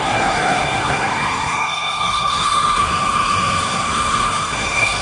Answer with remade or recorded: remade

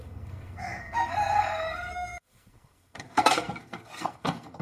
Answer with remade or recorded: remade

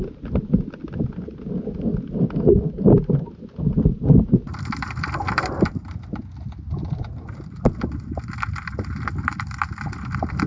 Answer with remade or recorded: recorded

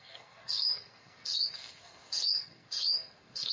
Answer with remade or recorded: remade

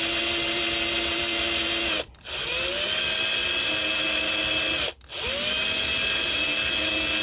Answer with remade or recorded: recorded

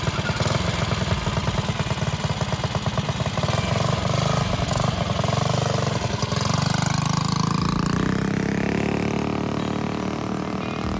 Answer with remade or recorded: recorded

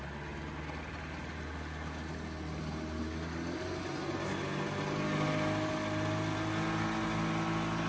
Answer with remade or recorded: recorded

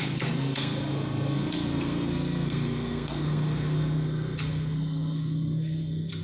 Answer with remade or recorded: remade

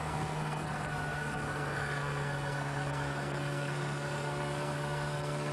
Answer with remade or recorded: remade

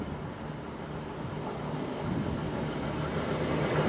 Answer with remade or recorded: recorded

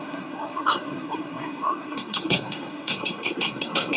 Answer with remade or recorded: remade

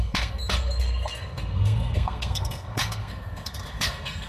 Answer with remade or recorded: remade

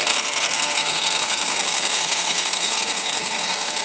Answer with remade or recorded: remade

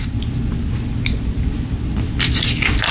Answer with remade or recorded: recorded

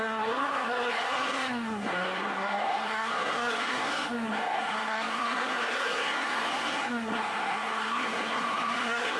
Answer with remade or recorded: remade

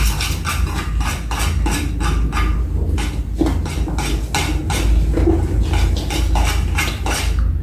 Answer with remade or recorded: recorded